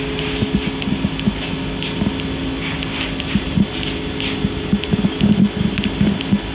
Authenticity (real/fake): real